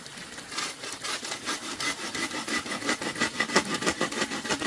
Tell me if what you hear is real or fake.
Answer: fake